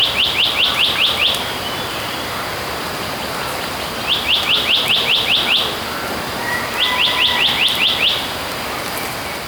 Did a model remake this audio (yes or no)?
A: no